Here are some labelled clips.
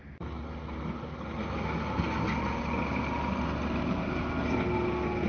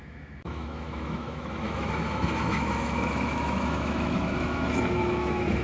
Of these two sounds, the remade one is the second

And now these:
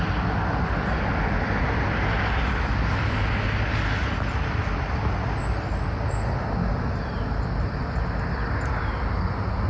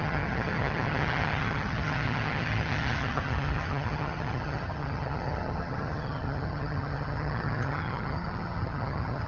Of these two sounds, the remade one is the second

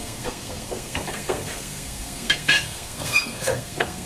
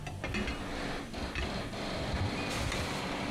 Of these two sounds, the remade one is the first